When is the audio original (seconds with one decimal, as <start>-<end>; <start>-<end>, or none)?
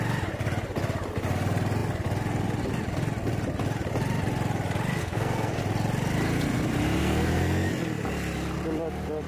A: 0.0-5.0; 5.6-7.0; 7.7-9.3